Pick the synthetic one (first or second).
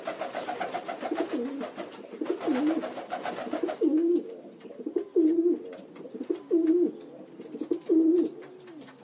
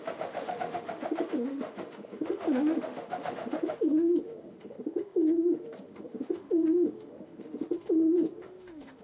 second